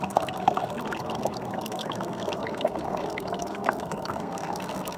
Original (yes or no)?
no